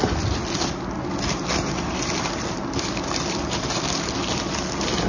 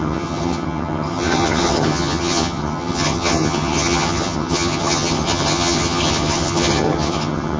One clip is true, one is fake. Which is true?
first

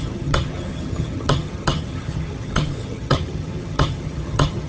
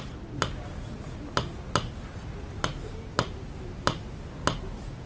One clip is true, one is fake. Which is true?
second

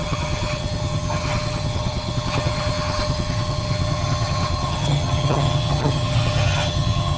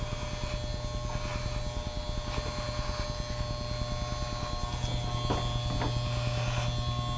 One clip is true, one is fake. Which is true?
second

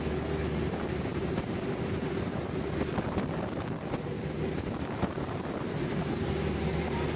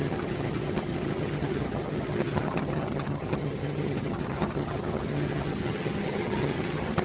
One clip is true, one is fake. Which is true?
first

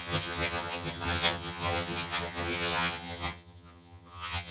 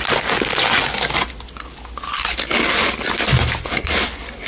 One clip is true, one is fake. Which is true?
second